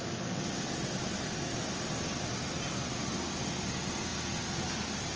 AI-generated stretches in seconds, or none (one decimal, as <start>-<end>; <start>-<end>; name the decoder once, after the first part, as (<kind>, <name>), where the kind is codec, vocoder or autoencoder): none